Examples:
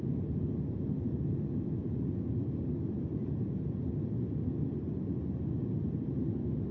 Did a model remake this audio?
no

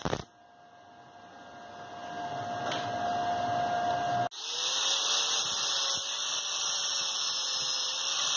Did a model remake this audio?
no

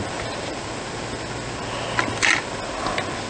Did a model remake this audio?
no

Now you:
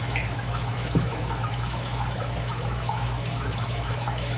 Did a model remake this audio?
yes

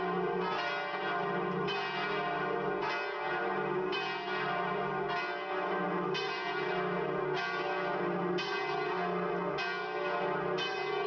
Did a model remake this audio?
no